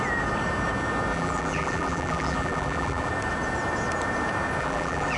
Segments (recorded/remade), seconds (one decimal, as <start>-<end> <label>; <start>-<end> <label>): 0.0-1.1 recorded; 1.1-3.1 remade; 3.1-4.6 recorded; 4.6-5.2 remade